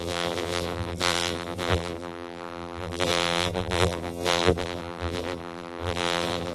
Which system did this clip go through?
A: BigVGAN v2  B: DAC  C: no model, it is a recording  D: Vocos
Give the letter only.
A